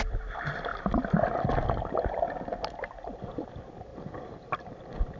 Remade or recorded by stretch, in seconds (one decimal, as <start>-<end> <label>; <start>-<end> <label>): 0.0-3.9 recorded; 3.9-4.8 remade; 4.8-5.2 recorded